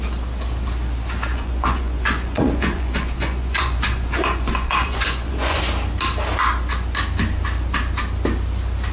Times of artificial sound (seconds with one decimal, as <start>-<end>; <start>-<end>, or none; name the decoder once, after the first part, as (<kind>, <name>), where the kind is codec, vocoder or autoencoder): 1.3-5.6 (vocoder, Vocos)